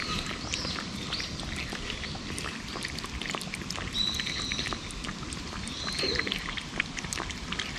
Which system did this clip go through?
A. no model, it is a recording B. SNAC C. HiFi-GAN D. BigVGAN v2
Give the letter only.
A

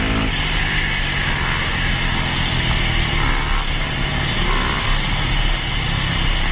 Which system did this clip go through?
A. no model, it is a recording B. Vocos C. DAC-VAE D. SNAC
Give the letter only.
A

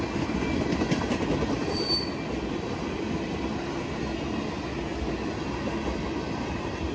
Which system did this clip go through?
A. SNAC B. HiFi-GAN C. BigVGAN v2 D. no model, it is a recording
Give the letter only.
D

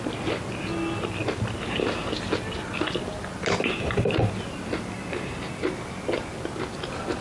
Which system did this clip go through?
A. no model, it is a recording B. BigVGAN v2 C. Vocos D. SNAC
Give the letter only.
A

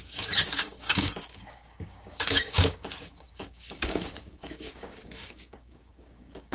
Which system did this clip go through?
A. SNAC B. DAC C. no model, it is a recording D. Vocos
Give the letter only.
B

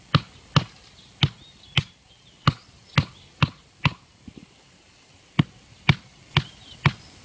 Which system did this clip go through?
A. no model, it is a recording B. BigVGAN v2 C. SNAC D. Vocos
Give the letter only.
A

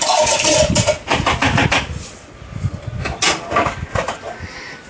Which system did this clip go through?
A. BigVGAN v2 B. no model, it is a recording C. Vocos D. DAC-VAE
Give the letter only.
B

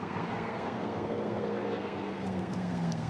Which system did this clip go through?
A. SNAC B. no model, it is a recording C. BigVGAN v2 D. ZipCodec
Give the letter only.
A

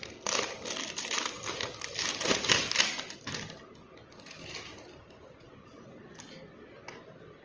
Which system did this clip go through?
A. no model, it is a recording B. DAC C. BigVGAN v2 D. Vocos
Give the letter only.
A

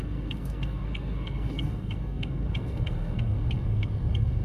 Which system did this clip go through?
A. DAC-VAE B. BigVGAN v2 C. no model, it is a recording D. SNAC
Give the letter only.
D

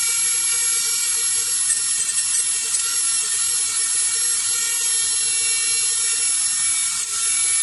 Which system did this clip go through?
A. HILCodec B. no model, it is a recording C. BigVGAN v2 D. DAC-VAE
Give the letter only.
B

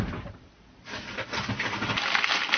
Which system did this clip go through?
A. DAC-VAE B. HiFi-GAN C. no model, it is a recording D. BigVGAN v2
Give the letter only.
C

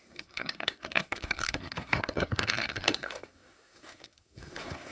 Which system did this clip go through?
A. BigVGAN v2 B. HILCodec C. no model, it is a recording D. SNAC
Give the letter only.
D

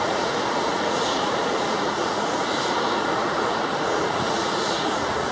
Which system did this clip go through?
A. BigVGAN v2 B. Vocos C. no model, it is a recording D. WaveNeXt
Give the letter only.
B